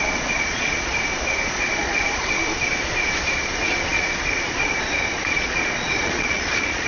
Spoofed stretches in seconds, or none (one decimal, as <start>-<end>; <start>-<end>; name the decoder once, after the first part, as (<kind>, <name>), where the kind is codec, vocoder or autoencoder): 0.0-0.9 (vocoder, Vocos); 1.5-2.4; 3.3-6.9